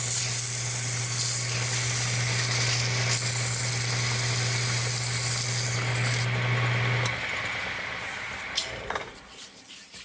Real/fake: real